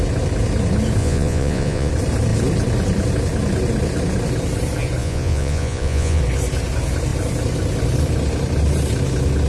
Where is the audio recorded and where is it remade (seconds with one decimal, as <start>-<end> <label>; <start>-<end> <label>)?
0.0-1.0 recorded; 1.0-1.9 remade; 1.9-5.0 recorded; 5.0-6.2 remade; 6.2-9.5 recorded